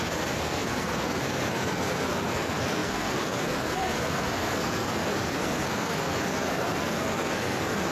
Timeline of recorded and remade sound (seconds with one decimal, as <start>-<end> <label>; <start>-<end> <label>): 0.0-7.9 remade